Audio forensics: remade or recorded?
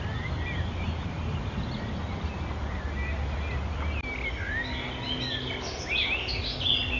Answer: recorded